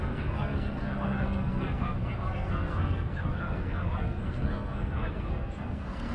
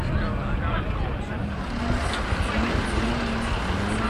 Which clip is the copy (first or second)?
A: first